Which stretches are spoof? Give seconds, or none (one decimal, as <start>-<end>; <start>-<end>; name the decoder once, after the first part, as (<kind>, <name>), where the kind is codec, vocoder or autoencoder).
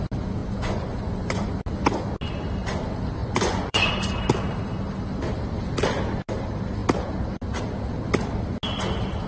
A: 0.4-1.5 (vocoder, Vocos); 3.2-3.9